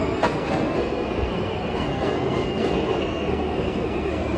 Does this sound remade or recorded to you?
remade